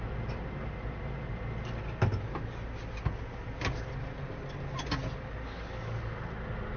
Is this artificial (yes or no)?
no